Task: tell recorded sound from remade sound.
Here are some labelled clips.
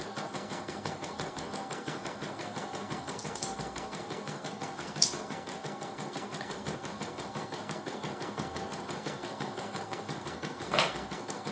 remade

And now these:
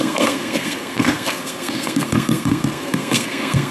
remade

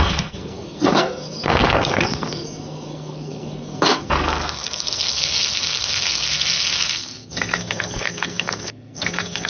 remade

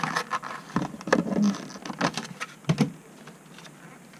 recorded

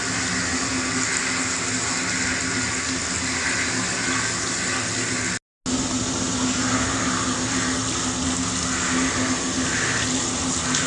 recorded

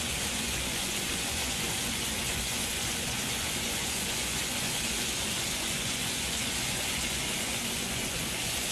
remade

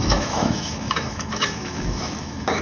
remade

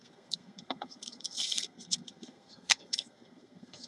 remade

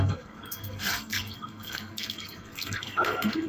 remade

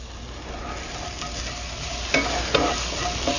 recorded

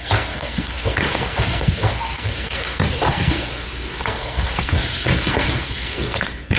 remade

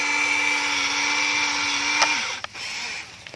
recorded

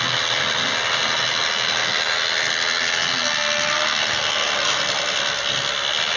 recorded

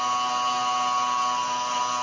recorded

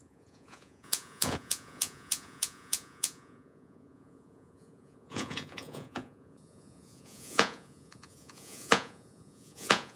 remade